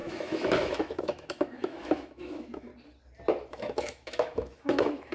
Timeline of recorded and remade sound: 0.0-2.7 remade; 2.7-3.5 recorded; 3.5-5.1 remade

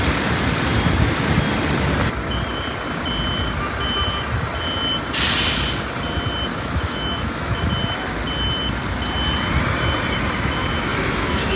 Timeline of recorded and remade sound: 0.0-6.5 recorded; 6.5-7.6 remade; 7.6-10.9 recorded; 10.9-11.6 remade

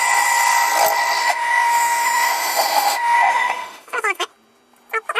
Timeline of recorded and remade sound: 0.0-1.2 recorded; 1.2-4.3 remade; 4.3-5.2 recorded

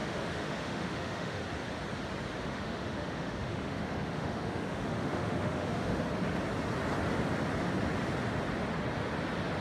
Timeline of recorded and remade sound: 0.0-1.4 remade; 1.4-2.4 recorded; 2.4-6.0 remade; 6.0-9.6 recorded